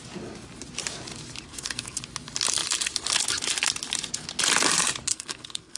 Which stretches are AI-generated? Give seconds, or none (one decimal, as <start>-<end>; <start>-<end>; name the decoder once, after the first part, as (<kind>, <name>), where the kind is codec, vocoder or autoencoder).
1.5-2.0 (codec, SNAC); 5.1-5.8